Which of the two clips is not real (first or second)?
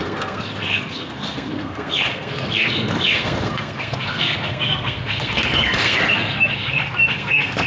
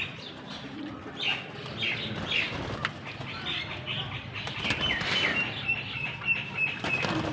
first